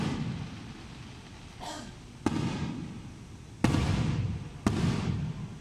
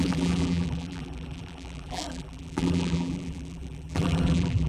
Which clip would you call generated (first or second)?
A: second